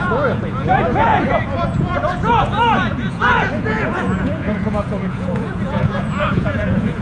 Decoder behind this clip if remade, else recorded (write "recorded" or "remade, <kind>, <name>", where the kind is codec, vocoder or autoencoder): remade, vocoder, Vocos